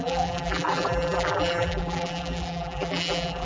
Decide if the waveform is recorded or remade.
remade